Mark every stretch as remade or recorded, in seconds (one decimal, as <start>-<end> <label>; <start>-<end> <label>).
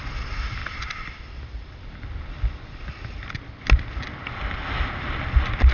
0.0-0.6 recorded; 0.6-1.3 remade; 1.3-4.6 recorded; 4.6-5.7 remade